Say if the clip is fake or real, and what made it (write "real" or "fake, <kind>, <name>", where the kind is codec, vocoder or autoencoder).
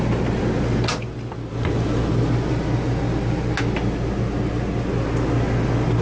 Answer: real